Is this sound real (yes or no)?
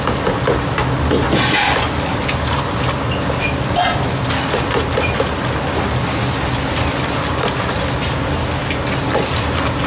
yes